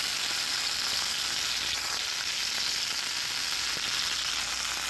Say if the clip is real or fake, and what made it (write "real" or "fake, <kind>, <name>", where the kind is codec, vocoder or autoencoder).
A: real